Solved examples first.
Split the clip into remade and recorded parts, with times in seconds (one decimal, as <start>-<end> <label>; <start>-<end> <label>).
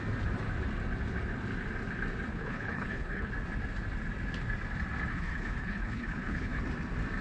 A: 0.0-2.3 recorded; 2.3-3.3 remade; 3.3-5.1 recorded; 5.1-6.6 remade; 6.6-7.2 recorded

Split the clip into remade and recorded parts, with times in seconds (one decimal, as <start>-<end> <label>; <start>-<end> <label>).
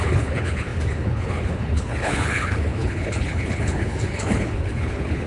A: 0.0-5.3 remade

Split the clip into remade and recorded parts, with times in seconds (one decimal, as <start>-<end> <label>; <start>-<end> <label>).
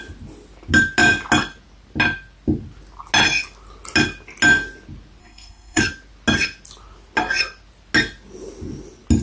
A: 0.0-5.2 recorded; 5.2-5.8 remade; 5.8-9.2 recorded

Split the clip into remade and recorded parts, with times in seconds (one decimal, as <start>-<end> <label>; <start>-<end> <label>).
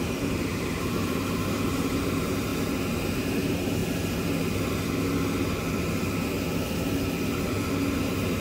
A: 0.0-2.5 remade; 2.5-3.0 recorded; 3.0-3.8 remade; 3.8-8.0 recorded; 8.0-8.4 remade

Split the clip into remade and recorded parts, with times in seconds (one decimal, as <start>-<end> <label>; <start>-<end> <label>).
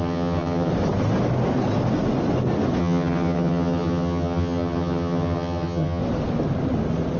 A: 0.0-0.7 remade; 0.7-2.8 recorded; 2.8-6.0 remade; 6.0-7.2 recorded